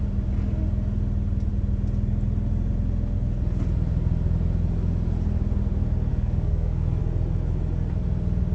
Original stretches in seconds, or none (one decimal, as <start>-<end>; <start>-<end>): 0.0-6.1; 7.0-8.5